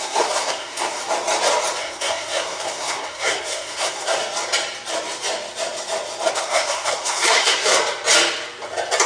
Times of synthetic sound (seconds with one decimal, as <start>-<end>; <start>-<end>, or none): 0.0-1.0; 1.8-4.2; 6.3-7.8